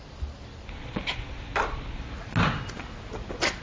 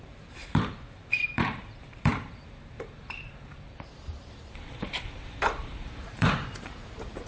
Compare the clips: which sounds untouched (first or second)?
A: first